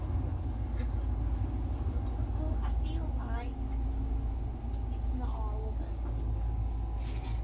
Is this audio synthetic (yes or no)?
no